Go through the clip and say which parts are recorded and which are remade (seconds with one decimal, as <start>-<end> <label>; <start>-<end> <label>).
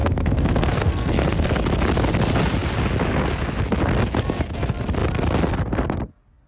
0.0-1.5 remade; 1.5-6.5 recorded